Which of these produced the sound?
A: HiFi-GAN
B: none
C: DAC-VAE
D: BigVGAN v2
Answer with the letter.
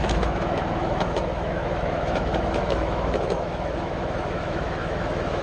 C